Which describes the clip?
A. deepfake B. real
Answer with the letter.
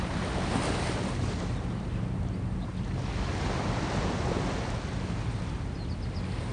B